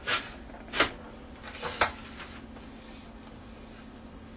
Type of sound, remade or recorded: recorded